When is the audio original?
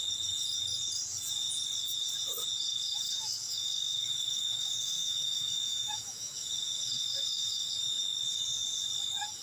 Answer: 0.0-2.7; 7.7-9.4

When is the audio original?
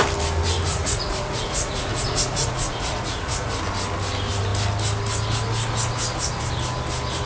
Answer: 0.0-0.7; 3.5-7.3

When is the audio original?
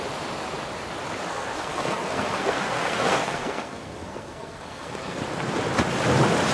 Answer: 0.0-1.3; 5.2-6.5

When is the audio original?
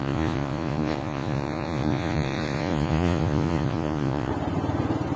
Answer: 4.3-5.2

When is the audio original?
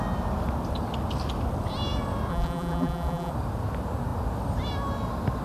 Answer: 0.0-2.3; 3.3-5.4